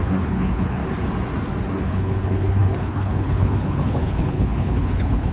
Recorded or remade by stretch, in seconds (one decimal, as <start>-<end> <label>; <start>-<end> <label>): 0.0-0.8 remade; 0.8-1.7 recorded; 1.7-5.3 remade